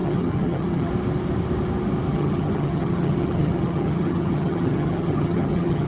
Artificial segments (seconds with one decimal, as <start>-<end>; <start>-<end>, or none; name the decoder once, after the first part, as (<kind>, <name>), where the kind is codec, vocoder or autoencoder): 0.0-0.9 (vocoder, HiFi-GAN); 2.1-5.9